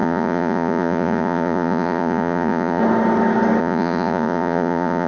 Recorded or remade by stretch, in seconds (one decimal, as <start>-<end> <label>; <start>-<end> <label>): 0.0-2.8 remade; 2.8-3.6 recorded; 3.6-5.1 remade